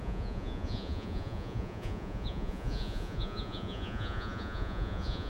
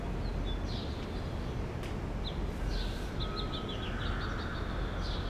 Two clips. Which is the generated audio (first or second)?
first